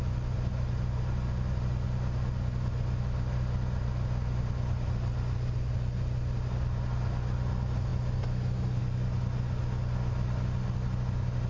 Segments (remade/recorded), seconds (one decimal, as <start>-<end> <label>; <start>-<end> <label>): 0.0-11.5 recorded